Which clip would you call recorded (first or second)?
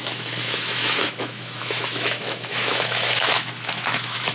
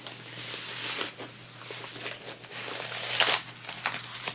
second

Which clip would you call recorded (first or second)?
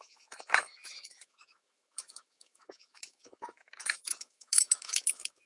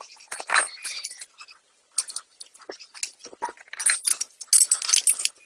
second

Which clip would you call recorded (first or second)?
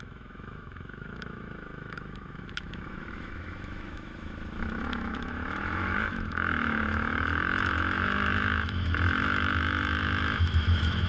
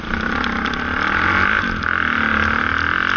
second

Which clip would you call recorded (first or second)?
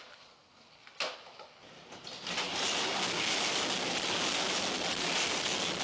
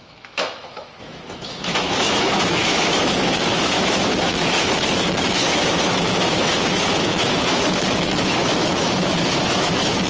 first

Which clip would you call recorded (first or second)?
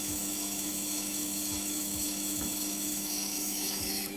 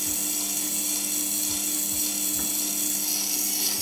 second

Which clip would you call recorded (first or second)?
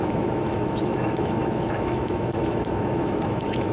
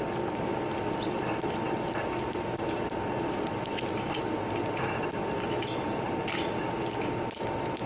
second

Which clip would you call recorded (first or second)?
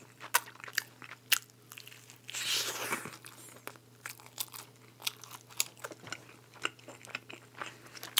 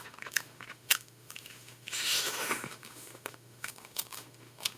first